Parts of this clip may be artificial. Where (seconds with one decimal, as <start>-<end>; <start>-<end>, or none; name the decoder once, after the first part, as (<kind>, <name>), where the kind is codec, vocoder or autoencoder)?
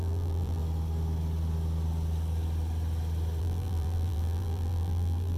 0.0-0.6 (vocoder, BigVGAN v2); 3.4-5.4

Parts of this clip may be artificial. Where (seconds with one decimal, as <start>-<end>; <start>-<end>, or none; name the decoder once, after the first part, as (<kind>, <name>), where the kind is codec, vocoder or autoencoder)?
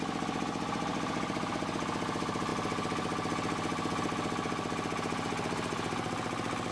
0.9-1.5 (vocoder, BigVGAN v2)